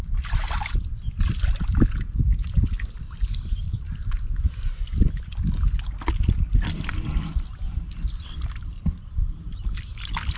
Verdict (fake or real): real